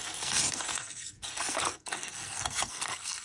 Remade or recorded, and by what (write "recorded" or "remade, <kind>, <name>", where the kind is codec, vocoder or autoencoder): remade, codec, SNAC